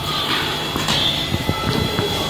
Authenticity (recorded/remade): recorded